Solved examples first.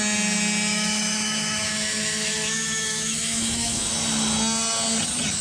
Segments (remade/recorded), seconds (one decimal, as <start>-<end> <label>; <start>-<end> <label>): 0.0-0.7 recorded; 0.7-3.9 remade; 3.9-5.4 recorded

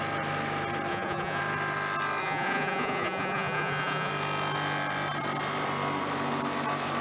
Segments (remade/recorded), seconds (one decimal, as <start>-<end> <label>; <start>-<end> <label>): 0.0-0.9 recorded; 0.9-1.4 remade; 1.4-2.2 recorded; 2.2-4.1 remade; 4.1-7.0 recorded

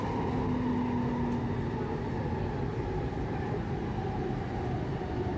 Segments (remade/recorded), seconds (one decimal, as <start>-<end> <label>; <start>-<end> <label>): 0.0-2.7 recorded; 2.7-4.6 remade; 4.6-5.4 recorded